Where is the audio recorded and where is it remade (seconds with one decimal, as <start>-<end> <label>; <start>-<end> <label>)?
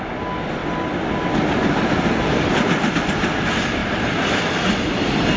0.0-5.4 recorded